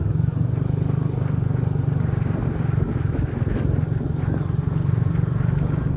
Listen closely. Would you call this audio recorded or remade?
recorded